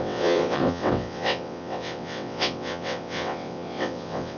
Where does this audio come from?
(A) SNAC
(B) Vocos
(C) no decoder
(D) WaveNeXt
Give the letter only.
D